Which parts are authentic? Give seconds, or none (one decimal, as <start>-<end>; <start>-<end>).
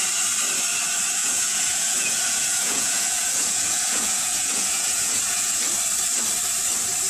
0.0-1.2; 5.5-7.1